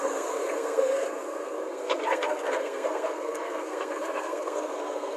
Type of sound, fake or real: fake